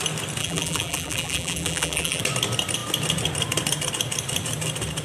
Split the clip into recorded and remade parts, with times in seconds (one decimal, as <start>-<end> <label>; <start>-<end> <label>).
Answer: 0.0-0.4 recorded; 0.4-2.2 remade; 2.2-5.0 recorded